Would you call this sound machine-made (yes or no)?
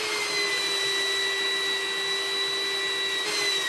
no